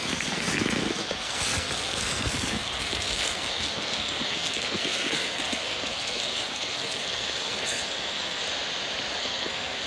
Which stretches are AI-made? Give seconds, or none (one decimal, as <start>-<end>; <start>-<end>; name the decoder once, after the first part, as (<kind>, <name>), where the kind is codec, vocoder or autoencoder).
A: 0.0-8.4 (codec, SNAC); 9.2-9.9